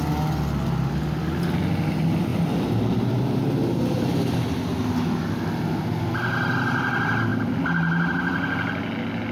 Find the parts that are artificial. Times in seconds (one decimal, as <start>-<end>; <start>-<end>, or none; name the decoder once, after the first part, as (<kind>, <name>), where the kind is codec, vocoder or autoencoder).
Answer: none